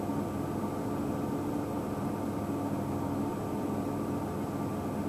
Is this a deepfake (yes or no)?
no